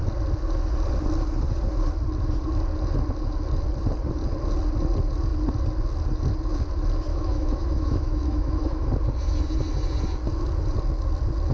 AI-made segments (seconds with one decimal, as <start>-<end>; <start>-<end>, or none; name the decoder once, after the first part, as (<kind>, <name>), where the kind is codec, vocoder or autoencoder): 7.1-8.9 (autoencoder, DAC-VAE)